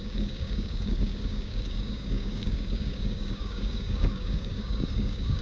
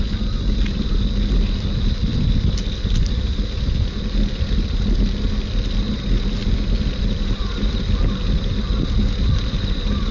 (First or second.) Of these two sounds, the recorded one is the second